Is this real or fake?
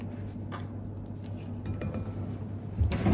real